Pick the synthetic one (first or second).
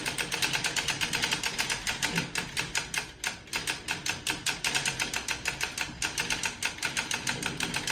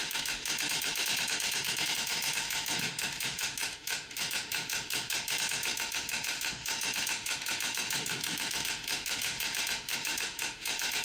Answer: second